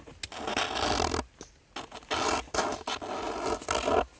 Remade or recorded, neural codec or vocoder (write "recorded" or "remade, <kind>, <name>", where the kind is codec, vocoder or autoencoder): recorded